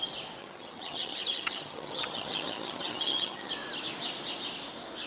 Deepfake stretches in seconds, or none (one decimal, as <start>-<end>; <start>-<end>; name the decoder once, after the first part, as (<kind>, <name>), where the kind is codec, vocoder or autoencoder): 0.4-3.5 (vocoder, HiFi-GAN)